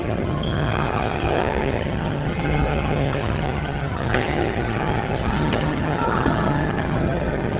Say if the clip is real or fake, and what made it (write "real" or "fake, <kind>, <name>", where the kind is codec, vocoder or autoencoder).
fake, vocoder, HiFi-GAN